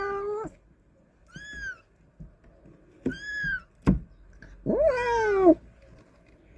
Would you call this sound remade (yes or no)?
no